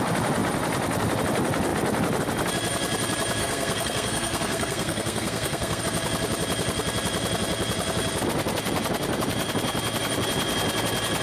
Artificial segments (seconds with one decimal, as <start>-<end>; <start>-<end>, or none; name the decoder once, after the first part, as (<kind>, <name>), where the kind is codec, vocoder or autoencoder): 3.4-5.8 (codec, SNAC)